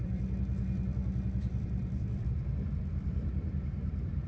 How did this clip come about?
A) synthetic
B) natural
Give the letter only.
A